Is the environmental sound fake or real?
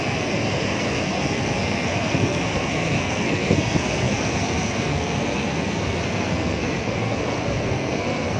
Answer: fake